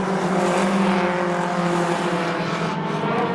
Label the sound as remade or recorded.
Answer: recorded